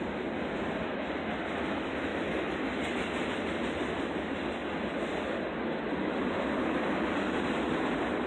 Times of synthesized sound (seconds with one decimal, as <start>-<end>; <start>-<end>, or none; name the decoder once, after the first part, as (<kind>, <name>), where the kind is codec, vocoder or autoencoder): none